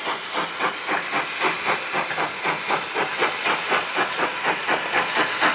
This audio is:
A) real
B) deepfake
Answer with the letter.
A